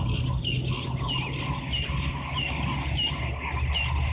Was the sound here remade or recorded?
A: recorded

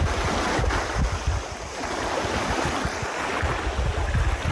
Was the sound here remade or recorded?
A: recorded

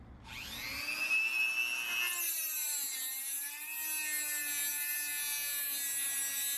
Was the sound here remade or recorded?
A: recorded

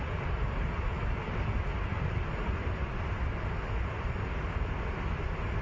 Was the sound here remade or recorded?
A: recorded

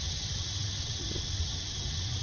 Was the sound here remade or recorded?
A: remade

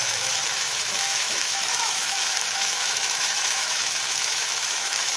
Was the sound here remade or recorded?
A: remade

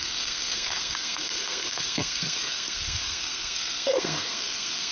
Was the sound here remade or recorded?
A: remade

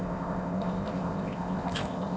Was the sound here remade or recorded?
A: remade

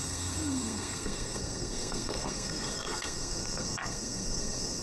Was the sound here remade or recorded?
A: remade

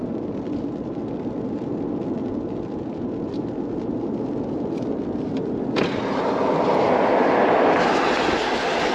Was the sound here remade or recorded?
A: recorded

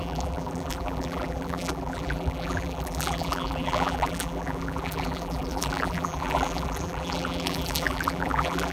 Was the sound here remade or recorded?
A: remade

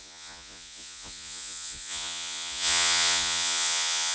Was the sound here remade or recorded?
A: remade